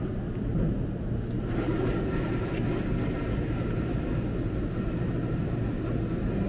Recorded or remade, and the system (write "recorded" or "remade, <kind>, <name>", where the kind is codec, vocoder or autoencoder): recorded